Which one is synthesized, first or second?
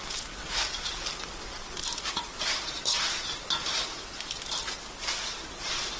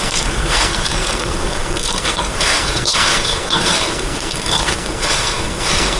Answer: second